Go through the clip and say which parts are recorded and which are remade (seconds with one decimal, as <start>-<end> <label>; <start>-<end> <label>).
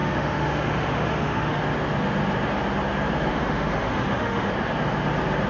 0.0-1.6 remade; 1.6-3.3 recorded; 3.3-4.5 remade; 4.5-5.5 recorded